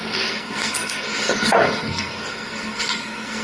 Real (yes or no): no